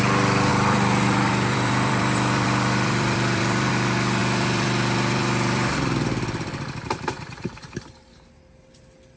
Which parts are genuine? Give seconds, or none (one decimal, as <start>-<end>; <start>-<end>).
0.0-0.5; 3.7-4.2; 7.7-9.2